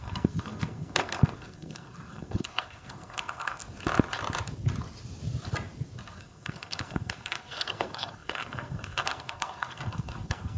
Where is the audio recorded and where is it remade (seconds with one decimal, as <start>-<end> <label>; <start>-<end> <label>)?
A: 0.0-3.6 remade; 3.6-6.2 recorded; 6.2-10.6 remade